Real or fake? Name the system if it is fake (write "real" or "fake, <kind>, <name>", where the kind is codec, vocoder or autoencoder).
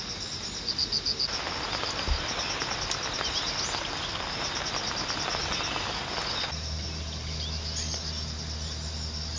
real